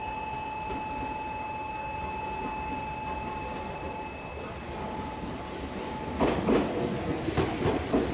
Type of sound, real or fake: real